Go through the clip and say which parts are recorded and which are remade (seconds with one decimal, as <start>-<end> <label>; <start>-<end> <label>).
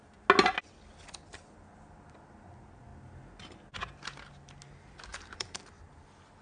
0.0-5.1 recorded; 5.1-5.6 remade; 5.6-6.4 recorded